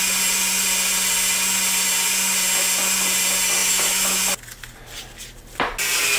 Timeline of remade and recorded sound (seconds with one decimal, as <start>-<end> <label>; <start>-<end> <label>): 0.0-3.6 recorded; 3.6-4.2 remade; 4.2-6.2 recorded